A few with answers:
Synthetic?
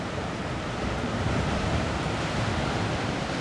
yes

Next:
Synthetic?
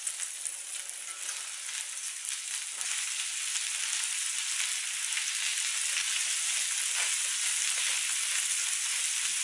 no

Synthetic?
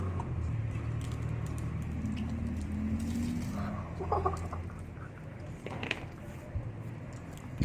no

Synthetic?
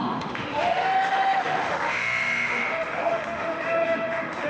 yes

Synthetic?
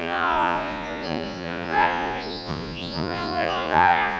yes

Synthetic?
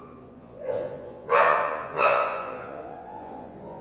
yes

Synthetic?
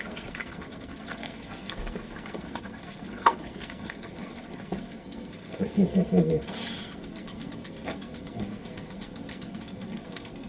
yes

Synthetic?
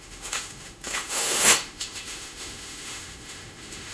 yes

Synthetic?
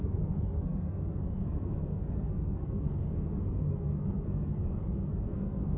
yes